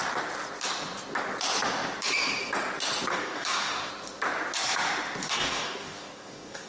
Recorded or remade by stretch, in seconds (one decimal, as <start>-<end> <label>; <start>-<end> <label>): 0.0-3.1 recorded; 3.1-3.9 remade; 3.9-5.2 recorded; 5.2-6.7 remade